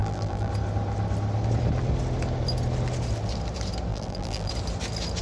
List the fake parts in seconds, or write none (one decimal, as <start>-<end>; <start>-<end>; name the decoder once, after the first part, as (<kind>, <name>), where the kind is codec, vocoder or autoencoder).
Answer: 0.0-0.5 (vocoder, BigVGAN v2); 3.9-4.5